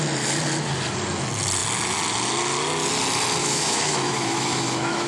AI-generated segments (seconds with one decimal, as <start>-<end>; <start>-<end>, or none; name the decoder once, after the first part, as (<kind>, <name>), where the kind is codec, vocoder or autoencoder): 3.4-5.1 (autoencoder, DAC-VAE)